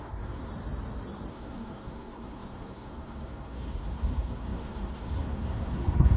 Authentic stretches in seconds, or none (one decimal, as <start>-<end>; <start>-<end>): 0.5-1.3

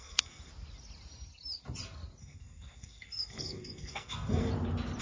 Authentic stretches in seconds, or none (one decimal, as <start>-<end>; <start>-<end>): 0.5-2.2; 4.5-5.0

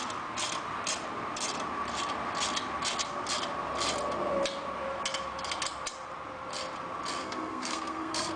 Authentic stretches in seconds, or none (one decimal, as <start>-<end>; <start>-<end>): 0.0-7.2

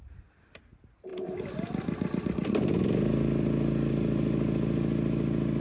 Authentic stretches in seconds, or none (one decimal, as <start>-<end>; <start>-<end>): 0.0-5.6

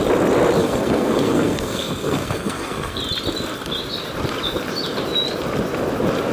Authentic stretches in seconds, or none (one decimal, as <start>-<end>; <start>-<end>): 0.0-0.6; 3.0-6.3

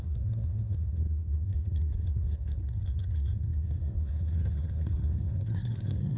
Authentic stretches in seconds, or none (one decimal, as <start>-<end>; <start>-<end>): none

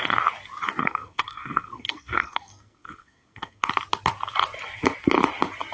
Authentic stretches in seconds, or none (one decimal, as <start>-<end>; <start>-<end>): 0.0-0.8; 3.7-5.7

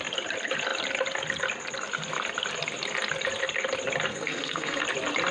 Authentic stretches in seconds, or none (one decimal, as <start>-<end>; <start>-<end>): 0.0-4.1; 4.8-5.3